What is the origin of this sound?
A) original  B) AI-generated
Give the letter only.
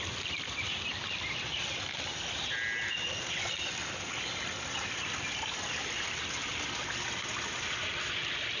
A